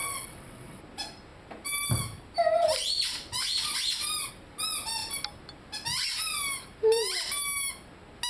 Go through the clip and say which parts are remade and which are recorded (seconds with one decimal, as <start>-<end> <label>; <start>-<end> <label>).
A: 0.0-0.8 remade; 0.8-8.3 recorded